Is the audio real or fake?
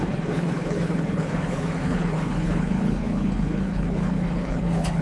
fake